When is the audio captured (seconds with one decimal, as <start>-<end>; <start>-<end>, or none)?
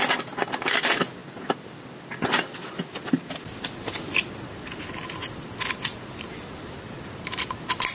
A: 0.0-7.9